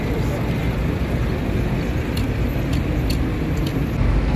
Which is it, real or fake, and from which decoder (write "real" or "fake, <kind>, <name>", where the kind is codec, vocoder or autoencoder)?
real